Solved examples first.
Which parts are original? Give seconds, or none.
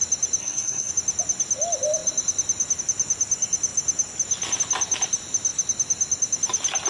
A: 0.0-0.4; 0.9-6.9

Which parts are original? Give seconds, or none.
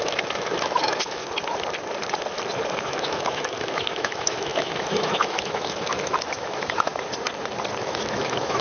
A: 1.2-2.9; 6.9-7.8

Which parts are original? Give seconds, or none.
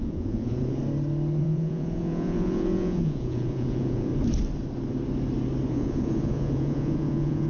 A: 0.8-1.4; 4.1-5.7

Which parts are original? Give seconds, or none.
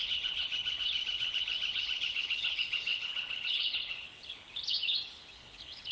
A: none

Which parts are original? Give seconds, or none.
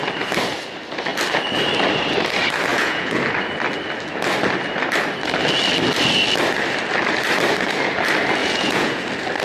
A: 0.0-2.7; 3.2-8.4; 9.0-9.4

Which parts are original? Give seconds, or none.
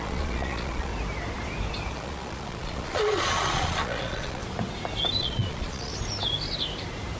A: 0.9-1.9; 4.4-5.2; 5.9-7.2